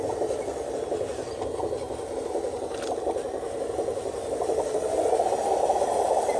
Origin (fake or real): real